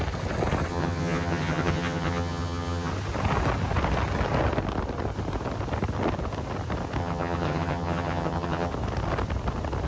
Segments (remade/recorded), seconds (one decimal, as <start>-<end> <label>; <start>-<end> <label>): 0.0-0.7 recorded; 0.7-2.9 remade; 2.9-7.0 recorded; 7.0-8.7 remade; 8.7-9.9 recorded